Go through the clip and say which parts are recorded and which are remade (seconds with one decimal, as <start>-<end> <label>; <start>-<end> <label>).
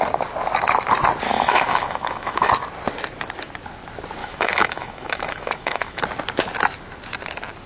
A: 0.0-1.3 recorded; 1.3-2.5 remade; 2.5-4.2 recorded; 4.2-6.0 remade; 6.0-7.7 recorded